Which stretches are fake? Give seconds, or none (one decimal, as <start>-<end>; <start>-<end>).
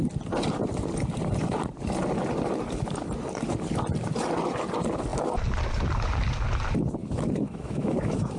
7.0-8.4